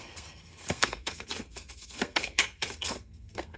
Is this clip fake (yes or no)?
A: yes